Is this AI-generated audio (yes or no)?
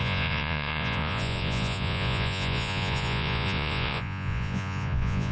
yes